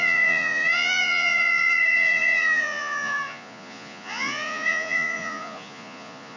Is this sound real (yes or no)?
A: no